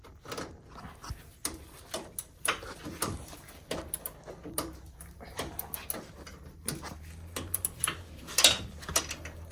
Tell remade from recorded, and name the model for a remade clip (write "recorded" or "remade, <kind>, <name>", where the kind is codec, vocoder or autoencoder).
recorded